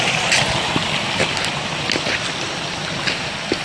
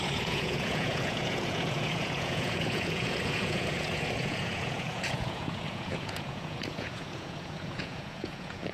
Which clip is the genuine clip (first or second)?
first